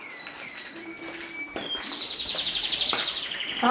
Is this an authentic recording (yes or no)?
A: yes